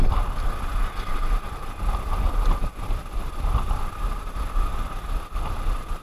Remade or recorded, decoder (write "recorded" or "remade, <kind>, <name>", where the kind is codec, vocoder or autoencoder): recorded